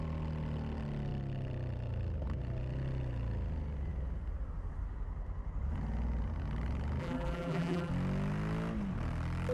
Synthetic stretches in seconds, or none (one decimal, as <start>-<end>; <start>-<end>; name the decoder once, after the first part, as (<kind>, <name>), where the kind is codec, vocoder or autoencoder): 7.0-7.9 (vocoder, BigVGAN v2)